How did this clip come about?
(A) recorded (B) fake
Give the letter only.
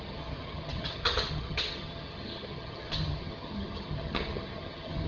B